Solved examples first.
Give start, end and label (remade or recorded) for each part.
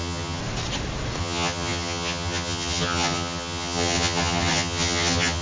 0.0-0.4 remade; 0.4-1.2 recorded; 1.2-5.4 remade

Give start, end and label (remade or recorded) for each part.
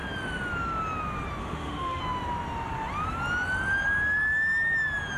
0.0-1.4 recorded; 1.4-2.0 remade; 2.0-5.2 recorded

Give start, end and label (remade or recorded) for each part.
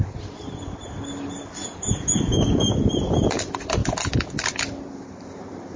0.0-1.6 recorded; 1.6-2.7 remade; 2.7-5.8 recorded